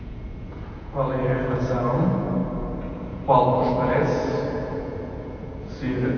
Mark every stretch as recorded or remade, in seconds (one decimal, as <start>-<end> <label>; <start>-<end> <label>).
0.0-6.2 remade